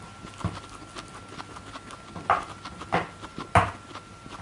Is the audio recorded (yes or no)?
yes